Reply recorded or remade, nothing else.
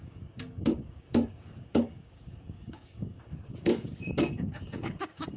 remade